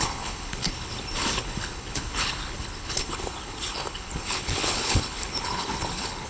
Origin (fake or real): fake